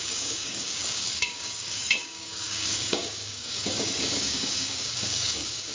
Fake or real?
fake